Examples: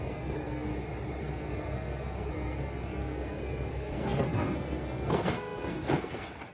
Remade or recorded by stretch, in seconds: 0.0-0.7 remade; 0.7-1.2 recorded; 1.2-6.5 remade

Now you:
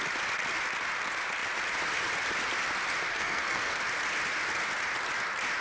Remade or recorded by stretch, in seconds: 0.0-3.1 recorded; 3.1-3.8 remade; 3.8-5.6 recorded

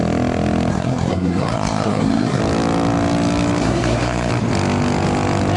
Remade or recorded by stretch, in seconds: 0.0-0.7 recorded; 0.7-2.4 remade; 2.4-3.6 recorded; 3.6-4.3 remade; 4.3-5.6 recorded

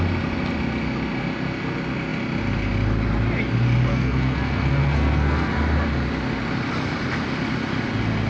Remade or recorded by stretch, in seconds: 0.0-3.9 recorded; 3.9-5.5 remade; 5.5-8.3 recorded

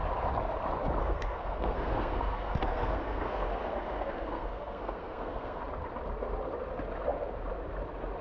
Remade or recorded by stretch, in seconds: 0.0-1.0 recorded; 1.0-5.6 remade; 5.6-8.2 recorded